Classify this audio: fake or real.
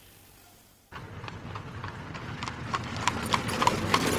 real